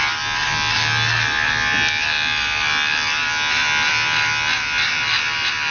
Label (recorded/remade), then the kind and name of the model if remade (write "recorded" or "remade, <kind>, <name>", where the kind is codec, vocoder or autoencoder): recorded